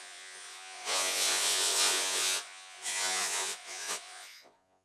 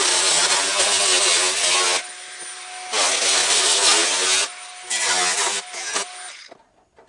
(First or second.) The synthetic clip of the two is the first